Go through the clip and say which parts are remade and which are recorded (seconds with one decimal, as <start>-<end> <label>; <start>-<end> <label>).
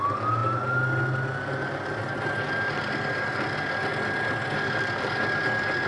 0.0-5.9 recorded